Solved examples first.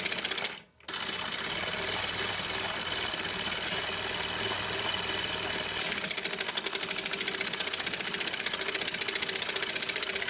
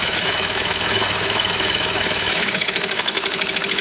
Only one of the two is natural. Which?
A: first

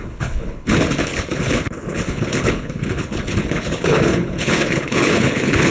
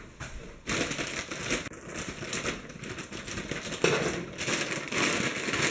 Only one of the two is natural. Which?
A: second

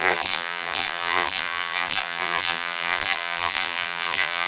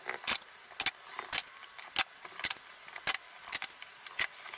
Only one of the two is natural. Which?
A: second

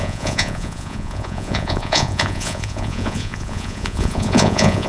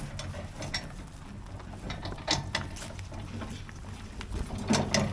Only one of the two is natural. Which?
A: second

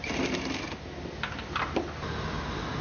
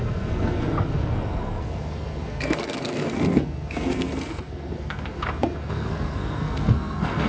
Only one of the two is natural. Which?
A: first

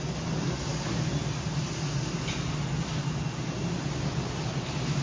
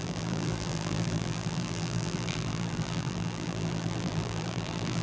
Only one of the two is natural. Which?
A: first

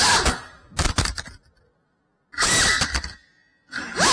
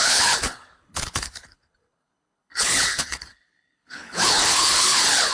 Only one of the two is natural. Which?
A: first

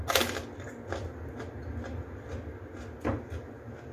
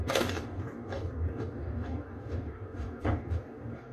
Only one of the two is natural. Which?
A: first